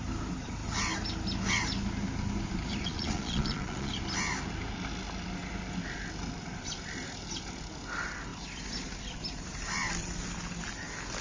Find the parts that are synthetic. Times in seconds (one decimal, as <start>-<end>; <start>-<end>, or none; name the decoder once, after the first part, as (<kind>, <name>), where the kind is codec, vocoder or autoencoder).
2.8-3.9 (vocoder, Vocos)